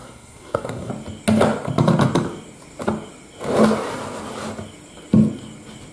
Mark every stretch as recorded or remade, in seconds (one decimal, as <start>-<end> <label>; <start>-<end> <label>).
0.0-0.9 remade; 0.9-5.9 recorded

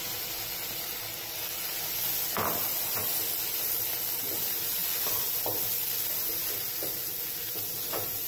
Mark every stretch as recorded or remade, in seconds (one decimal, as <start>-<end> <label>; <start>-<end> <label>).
0.0-8.3 recorded

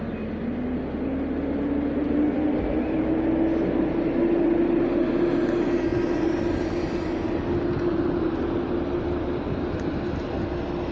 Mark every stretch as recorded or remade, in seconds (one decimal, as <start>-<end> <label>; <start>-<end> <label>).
0.0-5.9 recorded; 5.9-6.7 remade; 6.7-10.9 recorded

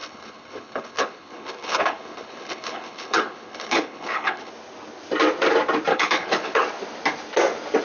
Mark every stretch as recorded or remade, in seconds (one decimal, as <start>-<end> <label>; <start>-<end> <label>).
0.0-4.5 remade; 4.5-5.9 recorded; 5.9-6.6 remade; 6.6-7.8 recorded